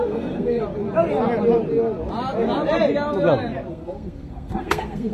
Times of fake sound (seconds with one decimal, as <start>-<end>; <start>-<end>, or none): 0.0-0.6; 3.7-5.1